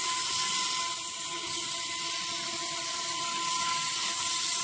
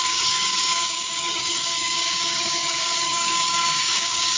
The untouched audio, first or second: first